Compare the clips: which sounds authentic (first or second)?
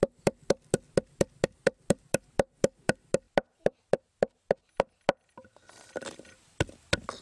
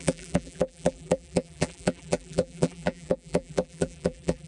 first